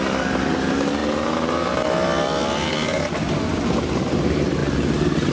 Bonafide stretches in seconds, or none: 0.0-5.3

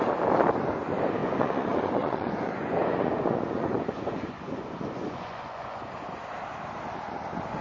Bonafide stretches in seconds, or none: 0.0-1.2; 5.8-7.6

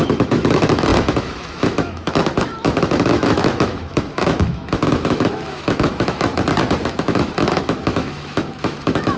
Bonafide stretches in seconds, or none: 6.3-7.0

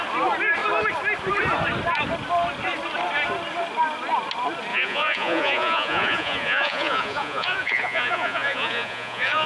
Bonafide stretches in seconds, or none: 0.0-4.7

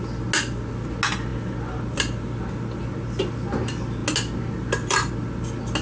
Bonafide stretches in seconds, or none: 0.0-5.8

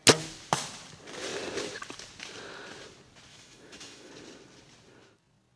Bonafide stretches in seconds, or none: 0.0-3.3; 4.1-5.6